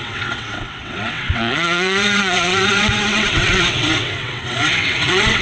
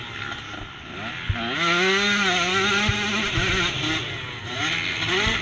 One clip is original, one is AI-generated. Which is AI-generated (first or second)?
first